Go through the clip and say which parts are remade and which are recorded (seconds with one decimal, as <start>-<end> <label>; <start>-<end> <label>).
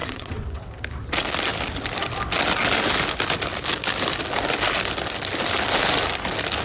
0.0-0.7 remade; 0.7-6.6 recorded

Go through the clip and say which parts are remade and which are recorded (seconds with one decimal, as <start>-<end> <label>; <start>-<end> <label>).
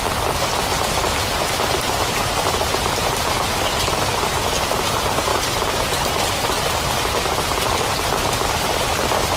0.0-5.3 remade; 5.3-8.3 recorded; 8.3-9.4 remade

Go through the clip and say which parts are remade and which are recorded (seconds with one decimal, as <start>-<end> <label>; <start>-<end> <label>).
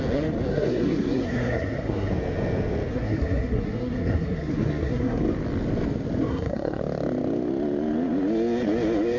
0.0-0.5 recorded; 0.5-2.1 remade; 2.1-2.9 recorded; 2.9-5.2 remade; 5.2-6.3 recorded; 6.3-6.8 remade; 6.8-9.2 recorded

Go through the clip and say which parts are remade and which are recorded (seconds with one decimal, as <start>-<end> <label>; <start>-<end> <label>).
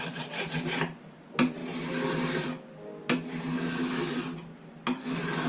0.0-5.5 recorded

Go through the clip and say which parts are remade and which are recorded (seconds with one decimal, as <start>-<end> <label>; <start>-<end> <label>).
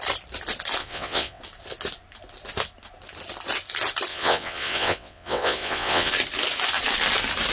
0.0-0.8 recorded; 0.8-1.4 remade; 1.4-4.1 recorded; 4.1-6.1 remade; 6.1-7.5 recorded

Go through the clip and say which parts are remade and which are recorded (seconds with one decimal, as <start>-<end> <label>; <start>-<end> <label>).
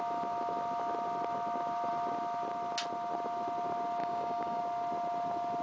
0.0-4.0 recorded; 4.0-4.6 remade; 4.6-5.6 recorded